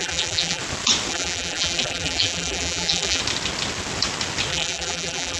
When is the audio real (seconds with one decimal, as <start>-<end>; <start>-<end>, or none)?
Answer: 0.6-1.1; 3.2-4.5